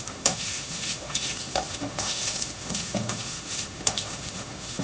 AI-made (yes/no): yes